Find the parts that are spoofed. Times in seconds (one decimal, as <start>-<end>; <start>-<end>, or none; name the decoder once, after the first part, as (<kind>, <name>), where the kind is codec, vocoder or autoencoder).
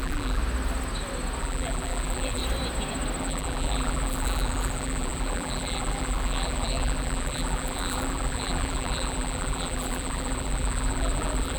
0.0-0.4 (vocoder, BigVGAN v2); 1.4-2.4; 3.2-11.6